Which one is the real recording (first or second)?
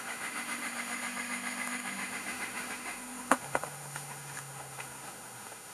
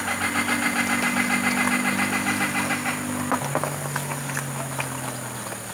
second